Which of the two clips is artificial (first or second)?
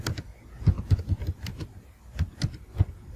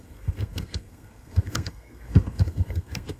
second